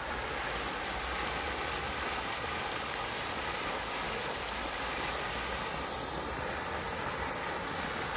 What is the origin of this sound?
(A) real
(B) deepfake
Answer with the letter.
A